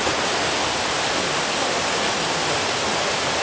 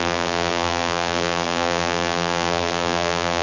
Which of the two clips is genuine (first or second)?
first